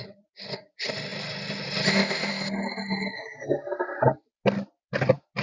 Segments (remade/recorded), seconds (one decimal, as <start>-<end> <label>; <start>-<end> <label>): 0.0-5.4 recorded